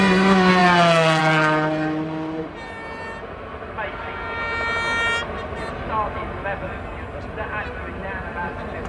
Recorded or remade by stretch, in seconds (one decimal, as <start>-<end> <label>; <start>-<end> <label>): 0.0-8.9 recorded